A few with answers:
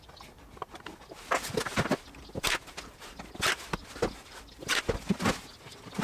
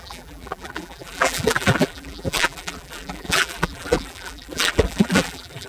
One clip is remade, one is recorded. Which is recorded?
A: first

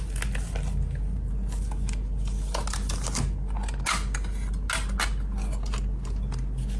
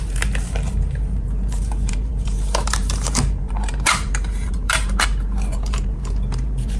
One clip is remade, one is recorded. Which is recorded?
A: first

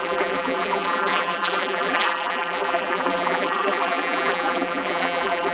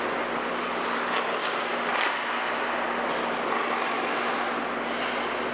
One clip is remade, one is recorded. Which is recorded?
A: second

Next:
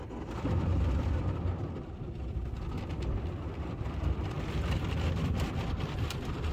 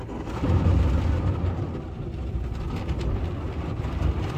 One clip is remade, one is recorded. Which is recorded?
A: second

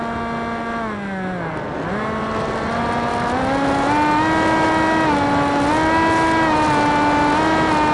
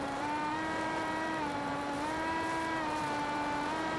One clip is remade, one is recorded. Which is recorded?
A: first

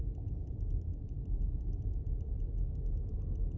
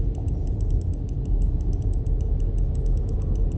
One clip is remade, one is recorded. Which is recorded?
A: second